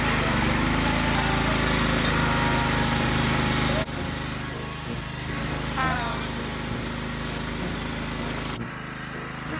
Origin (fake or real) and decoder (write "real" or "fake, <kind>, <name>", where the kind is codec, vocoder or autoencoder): real